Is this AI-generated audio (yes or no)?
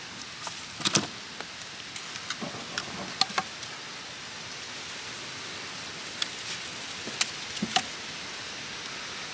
no